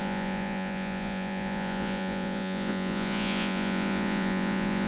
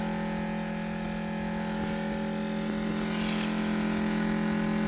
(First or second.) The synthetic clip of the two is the first